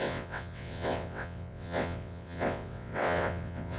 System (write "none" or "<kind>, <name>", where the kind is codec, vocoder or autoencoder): vocoder, WaveNeXt